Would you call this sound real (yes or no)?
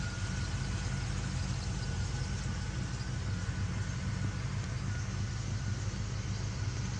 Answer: yes